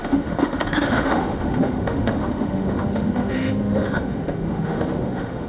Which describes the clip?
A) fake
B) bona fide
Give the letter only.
A